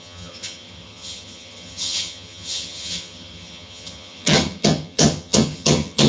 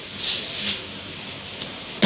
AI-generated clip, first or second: first